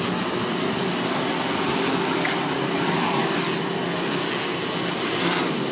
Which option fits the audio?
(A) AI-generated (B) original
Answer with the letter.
B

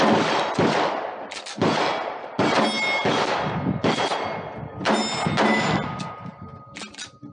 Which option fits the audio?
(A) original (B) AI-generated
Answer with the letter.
A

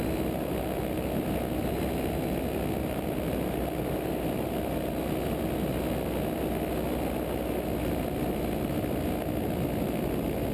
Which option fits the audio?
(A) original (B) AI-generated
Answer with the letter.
A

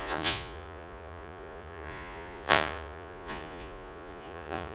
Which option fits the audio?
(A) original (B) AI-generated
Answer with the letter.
B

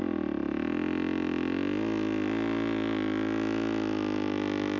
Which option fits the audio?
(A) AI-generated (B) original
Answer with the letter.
B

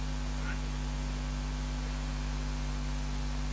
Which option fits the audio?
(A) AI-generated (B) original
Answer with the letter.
B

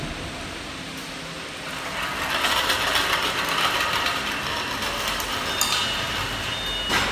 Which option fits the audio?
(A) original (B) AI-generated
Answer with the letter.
A